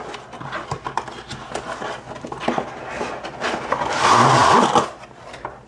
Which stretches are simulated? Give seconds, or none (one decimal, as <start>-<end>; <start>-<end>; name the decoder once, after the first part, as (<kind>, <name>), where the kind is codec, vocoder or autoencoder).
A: none